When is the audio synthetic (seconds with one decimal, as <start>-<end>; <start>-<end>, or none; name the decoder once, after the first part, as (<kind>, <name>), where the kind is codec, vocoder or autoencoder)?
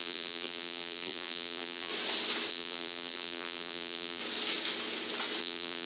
0.0-1.9 (vocoder, BigVGAN v2); 2.5-4.2; 5.4-5.9